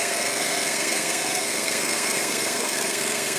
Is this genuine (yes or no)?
no